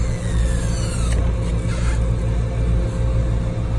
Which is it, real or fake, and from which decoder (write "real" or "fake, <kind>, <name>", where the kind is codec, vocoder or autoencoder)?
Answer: real